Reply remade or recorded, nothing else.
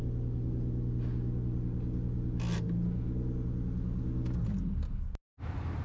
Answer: recorded